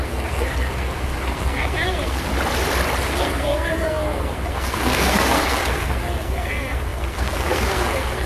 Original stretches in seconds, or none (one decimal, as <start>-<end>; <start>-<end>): 2.3-3.1